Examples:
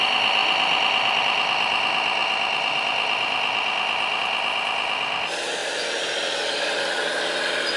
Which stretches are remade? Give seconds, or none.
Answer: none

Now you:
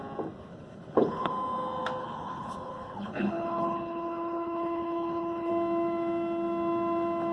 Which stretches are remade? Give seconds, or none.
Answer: 0.5-1.3 (codec, HILCodec); 2.0-5.5

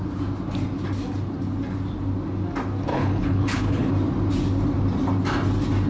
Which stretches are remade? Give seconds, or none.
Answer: 2.9-3.9 (codec, HILCodec)

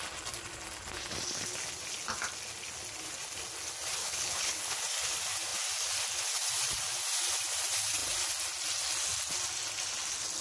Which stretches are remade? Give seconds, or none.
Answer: 4.0-4.8 (codec, HILCodec)

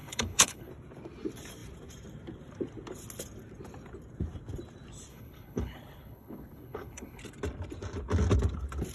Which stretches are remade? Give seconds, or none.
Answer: 0.0-0.7 (codec, HILCodec); 5.1-7.2

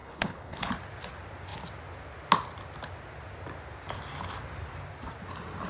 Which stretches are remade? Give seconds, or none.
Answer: 0.0-0.7 (codec, HILCodec)

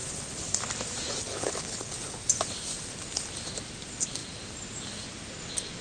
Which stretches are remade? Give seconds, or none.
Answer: 0.0-0.7 (codec, HILCodec); 1.3-2.1